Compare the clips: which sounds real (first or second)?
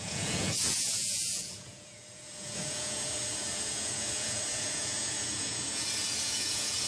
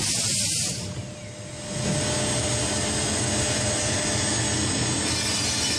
second